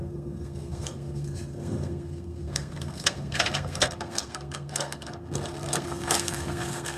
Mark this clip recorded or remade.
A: remade